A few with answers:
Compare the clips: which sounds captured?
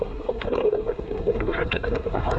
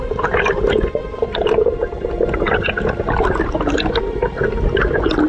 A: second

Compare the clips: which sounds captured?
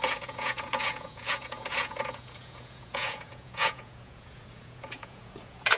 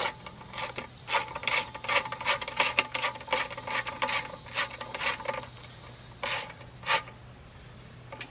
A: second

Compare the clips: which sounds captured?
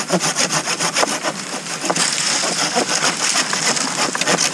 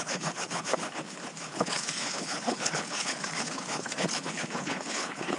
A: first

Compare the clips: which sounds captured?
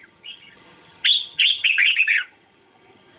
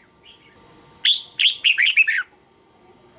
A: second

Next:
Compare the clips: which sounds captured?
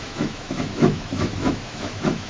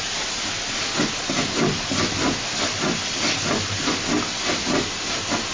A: second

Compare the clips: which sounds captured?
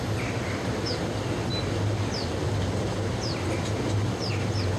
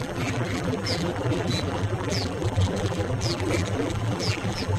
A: first